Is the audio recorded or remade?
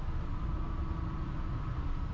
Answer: recorded